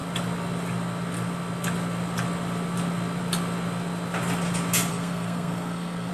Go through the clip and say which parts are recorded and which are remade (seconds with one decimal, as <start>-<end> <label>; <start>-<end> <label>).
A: 0.0-4.9 recorded; 4.9-6.1 remade